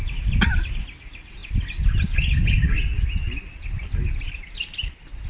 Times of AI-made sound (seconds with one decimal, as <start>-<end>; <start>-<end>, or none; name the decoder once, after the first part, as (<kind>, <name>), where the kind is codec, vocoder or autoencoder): none